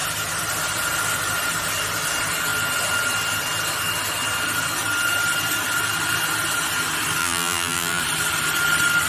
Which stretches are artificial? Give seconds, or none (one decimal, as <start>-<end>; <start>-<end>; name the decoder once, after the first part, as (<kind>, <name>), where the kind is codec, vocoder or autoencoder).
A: 7.2-8.0 (vocoder, BigVGAN v2)